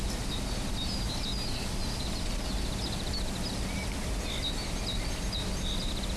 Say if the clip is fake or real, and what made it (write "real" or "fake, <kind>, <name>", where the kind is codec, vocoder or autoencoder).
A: real